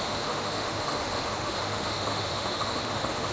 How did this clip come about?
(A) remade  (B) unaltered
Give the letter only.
A